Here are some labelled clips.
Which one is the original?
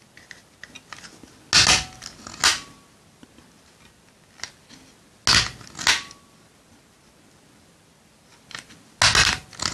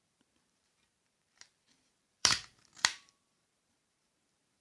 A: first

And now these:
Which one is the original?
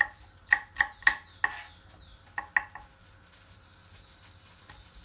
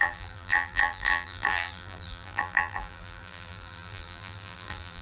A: first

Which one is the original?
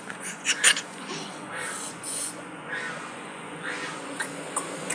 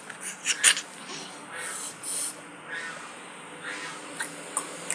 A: second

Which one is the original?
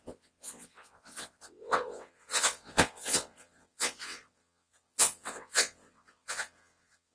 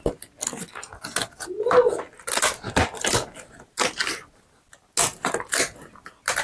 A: second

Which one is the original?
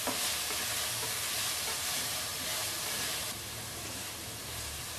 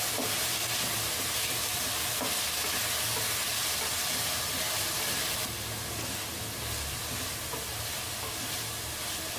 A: second